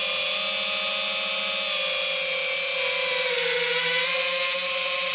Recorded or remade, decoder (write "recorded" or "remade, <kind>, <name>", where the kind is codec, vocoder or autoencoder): recorded